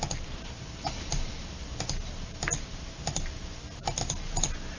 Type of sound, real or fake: real